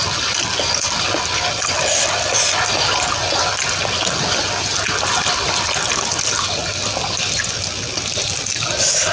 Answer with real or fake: real